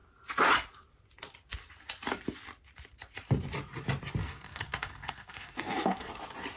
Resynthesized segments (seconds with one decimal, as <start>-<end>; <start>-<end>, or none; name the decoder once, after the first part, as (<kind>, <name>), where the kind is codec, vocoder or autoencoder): 4.2-6.1 (codec, SNAC)